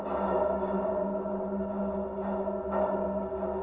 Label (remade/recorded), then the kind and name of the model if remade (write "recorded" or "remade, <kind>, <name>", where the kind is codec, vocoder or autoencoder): recorded